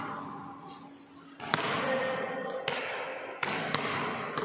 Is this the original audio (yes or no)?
yes